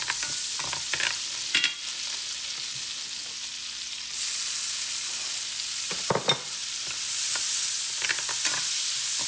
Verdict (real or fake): real